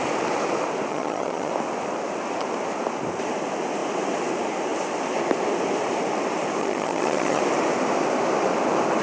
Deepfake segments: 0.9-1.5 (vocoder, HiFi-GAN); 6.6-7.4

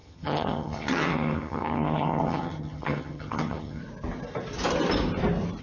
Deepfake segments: 0.0-3.8 (vocoder, HiFi-GAN)

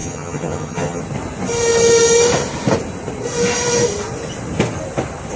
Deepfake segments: 0.0-1.0 (vocoder, HiFi-GAN)

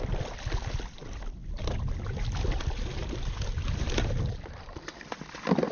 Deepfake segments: none

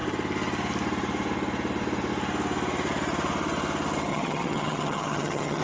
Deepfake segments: 4.1-5.6 (vocoder, HiFi-GAN)

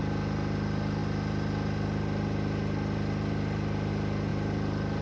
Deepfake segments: none